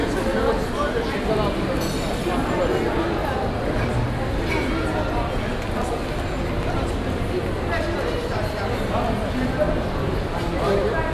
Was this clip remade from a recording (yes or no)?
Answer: no